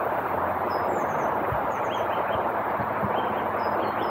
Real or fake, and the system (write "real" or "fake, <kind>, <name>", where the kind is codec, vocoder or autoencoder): real